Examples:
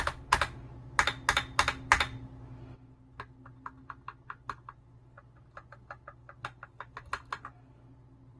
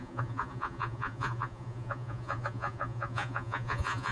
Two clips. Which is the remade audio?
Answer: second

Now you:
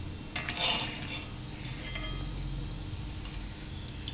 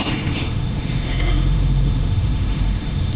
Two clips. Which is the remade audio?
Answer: second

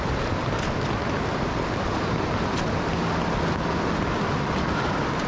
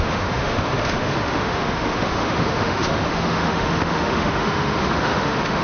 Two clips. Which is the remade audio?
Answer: second